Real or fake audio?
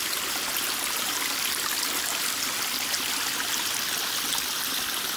real